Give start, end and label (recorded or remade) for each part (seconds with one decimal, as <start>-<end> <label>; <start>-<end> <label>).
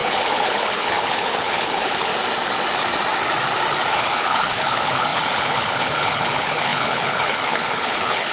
0.0-2.1 remade; 2.1-3.9 recorded; 3.9-8.3 remade